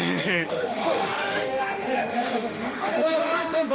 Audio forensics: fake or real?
fake